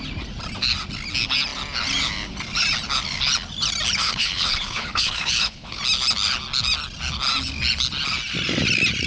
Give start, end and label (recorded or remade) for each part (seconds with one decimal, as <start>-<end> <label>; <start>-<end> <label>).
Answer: 0.0-4.0 recorded; 4.0-5.8 remade; 5.8-9.1 recorded